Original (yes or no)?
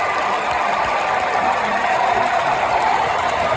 yes